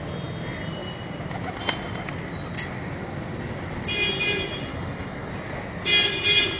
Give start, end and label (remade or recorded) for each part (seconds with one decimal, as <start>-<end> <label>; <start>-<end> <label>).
0.0-4.7 recorded; 4.7-5.3 remade; 5.3-6.6 recorded